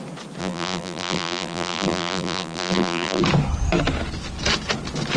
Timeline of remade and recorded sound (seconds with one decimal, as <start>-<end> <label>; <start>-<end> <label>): 0.0-0.4 recorded; 0.4-3.2 remade; 3.2-5.2 recorded